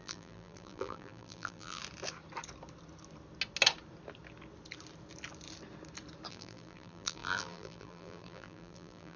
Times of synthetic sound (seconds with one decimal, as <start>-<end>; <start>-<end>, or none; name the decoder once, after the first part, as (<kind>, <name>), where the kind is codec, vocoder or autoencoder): 0.0-1.8 (vocoder, BigVGAN v2); 6.3-9.2